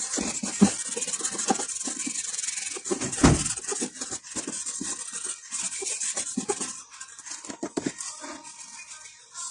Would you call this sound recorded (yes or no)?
yes